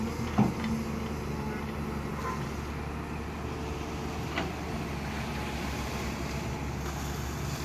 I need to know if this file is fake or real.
real